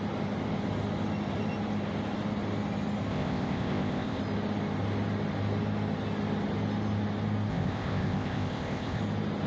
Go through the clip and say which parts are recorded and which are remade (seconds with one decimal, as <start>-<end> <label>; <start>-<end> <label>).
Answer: 0.0-3.1 recorded; 3.1-4.2 remade; 4.2-7.5 recorded; 7.5-9.0 remade; 9.0-9.5 recorded